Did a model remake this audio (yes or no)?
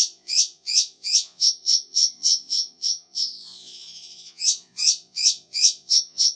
yes